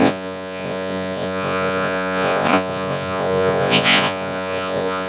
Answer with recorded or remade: remade